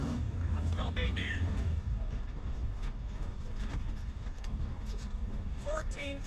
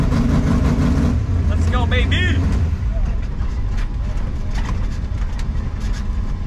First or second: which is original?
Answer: second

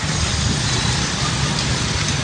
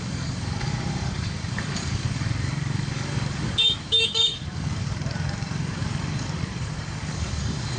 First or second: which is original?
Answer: first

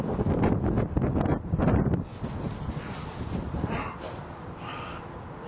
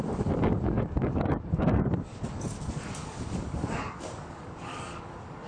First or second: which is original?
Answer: first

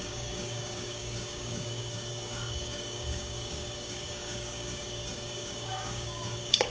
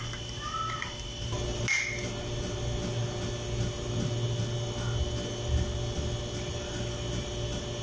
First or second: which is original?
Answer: second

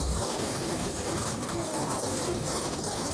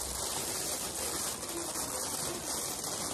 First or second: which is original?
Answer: second